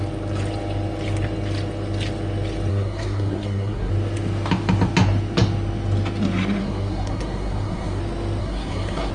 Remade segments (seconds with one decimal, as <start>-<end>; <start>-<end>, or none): 2.7-3.9; 6.6-8.0; 8.4-9.1